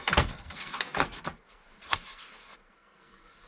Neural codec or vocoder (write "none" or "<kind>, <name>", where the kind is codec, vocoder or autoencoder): codec, SNAC